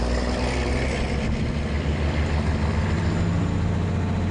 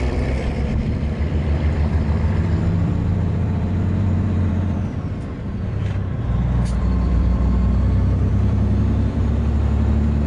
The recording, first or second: first